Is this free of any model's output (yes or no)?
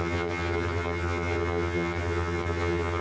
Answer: no